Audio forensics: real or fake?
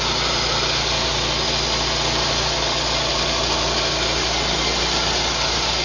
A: real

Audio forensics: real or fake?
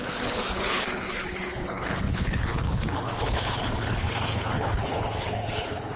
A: fake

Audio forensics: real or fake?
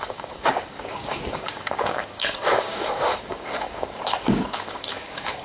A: fake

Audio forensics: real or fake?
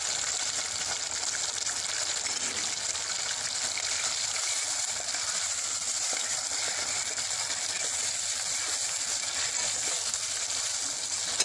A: real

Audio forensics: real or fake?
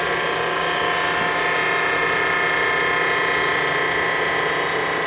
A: real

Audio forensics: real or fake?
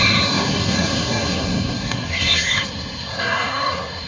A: fake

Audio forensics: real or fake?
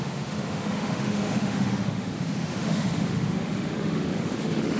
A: fake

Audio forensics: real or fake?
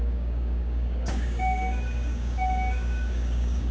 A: fake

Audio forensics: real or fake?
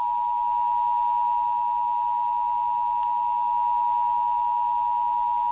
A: real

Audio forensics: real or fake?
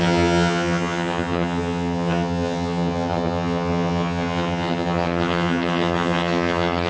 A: fake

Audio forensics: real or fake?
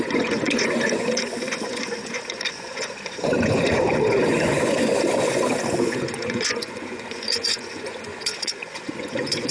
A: fake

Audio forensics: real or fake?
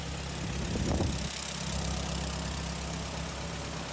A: real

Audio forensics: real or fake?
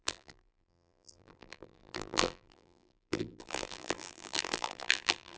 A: fake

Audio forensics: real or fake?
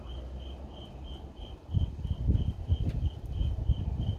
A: real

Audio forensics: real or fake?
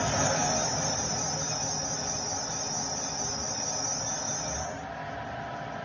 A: real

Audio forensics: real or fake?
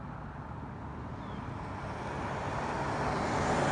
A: real